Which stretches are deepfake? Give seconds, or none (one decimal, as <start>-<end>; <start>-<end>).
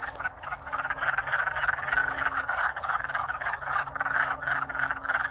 0.0-1.4; 2.0-5.3